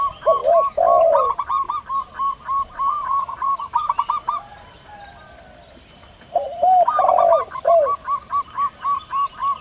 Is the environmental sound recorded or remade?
recorded